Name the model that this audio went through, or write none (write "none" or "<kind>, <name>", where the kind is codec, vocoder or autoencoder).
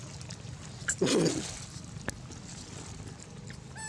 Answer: none